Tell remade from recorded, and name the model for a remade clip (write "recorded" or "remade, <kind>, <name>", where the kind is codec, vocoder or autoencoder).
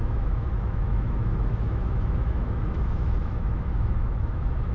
remade, autoencoder, DAC-VAE